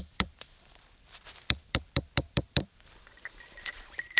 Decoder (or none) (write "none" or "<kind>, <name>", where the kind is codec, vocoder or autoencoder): vocoder, BigVGAN v2